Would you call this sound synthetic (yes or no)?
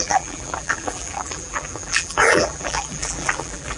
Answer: yes